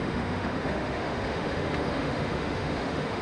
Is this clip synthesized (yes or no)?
yes